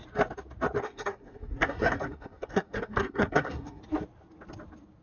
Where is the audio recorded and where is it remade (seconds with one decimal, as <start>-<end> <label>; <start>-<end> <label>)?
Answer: 0.0-0.8 recorded; 0.8-3.8 remade; 3.8-5.0 recorded